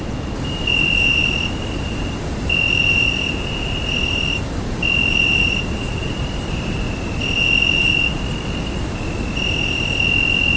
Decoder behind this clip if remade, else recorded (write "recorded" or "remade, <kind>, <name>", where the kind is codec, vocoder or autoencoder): recorded